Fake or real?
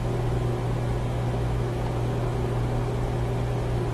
real